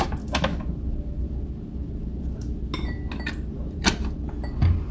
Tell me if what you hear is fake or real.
real